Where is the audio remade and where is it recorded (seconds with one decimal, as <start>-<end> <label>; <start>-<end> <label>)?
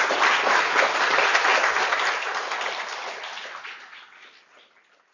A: 0.0-5.1 recorded